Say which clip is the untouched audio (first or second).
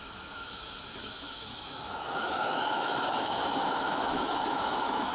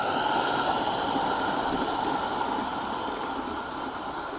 second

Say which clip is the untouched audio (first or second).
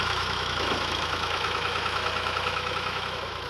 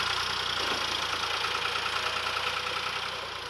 second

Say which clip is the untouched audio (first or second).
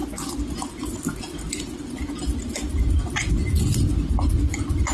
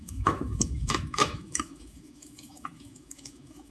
first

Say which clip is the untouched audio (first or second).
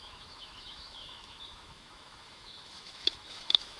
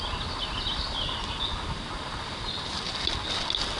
second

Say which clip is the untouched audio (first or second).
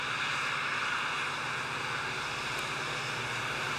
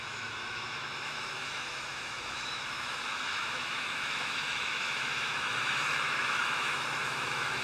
first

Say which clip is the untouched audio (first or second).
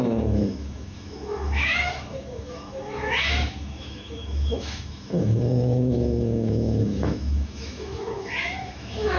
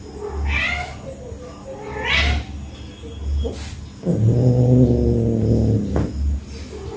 second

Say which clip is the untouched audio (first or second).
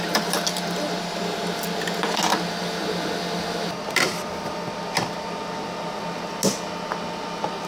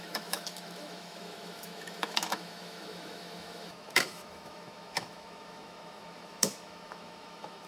first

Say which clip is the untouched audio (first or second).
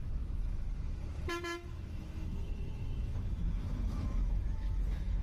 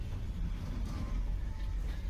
second